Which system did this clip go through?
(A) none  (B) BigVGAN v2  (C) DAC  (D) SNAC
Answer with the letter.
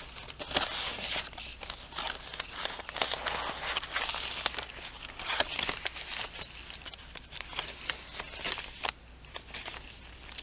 A